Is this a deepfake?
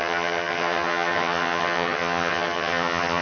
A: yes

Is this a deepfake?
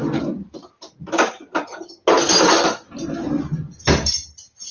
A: no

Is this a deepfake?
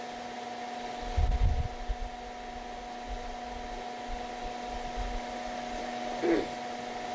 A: no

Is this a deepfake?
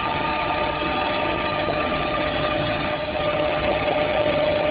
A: yes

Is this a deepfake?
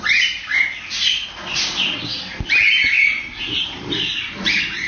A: no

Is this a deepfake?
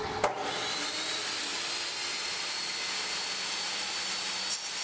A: no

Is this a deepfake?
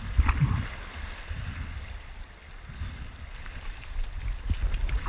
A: no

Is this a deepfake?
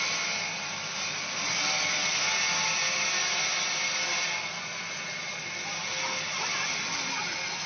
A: no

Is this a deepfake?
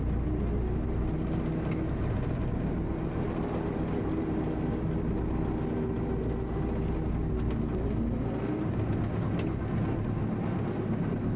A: no